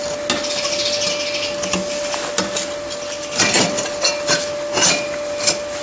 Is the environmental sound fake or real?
real